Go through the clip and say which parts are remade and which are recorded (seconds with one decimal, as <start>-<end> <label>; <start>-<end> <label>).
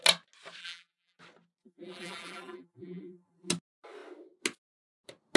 0.0-0.6 recorded; 0.6-1.2 remade; 1.2-1.6 recorded; 1.6-3.5 remade; 3.5-5.4 recorded